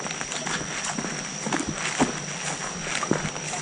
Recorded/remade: recorded